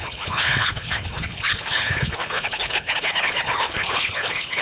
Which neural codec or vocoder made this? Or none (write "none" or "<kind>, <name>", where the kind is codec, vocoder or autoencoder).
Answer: codec, HILCodec